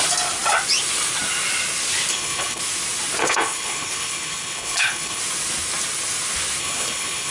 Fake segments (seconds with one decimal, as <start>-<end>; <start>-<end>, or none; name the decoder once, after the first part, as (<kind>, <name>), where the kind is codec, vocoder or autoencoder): 2.1-2.6 (codec, HILCodec); 3.2-5.2; 6.6-7.3